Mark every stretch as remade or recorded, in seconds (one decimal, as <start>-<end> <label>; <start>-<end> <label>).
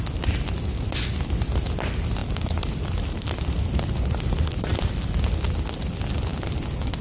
0.0-2.2 recorded; 2.2-2.8 remade; 2.8-7.0 recorded